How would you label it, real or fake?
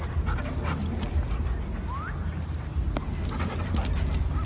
real